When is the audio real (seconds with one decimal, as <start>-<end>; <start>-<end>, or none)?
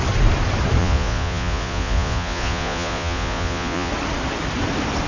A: 0.0-0.8; 3.9-5.1